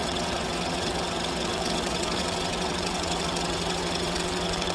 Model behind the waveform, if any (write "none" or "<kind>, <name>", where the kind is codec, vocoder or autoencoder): vocoder, WaveNeXt